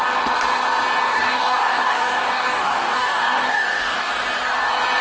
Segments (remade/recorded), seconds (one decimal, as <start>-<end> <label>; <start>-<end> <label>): 0.0-1.1 recorded; 1.1-4.1 remade; 4.1-5.0 recorded